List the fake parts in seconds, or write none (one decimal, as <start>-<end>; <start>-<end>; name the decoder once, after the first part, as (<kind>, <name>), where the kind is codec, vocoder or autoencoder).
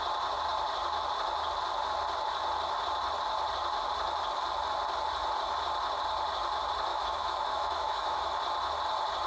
6.9-8.4 (autoencoder, DAC-VAE)